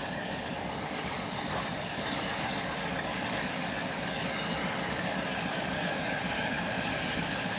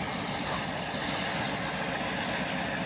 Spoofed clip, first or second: first